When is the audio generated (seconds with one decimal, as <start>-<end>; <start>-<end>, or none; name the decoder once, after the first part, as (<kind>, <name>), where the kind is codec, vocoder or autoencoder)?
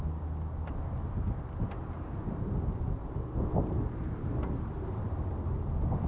none